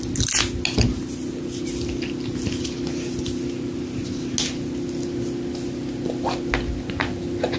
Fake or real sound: real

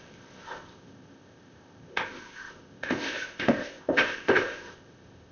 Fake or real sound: fake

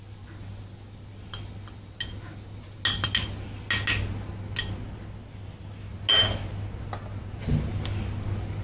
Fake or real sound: real